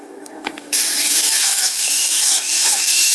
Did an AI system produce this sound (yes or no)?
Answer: yes